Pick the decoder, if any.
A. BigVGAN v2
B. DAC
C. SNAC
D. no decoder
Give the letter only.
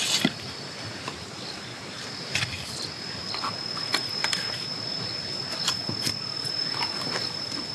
D